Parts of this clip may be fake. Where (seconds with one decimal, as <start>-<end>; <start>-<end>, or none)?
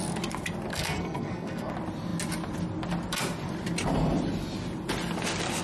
0.7-1.7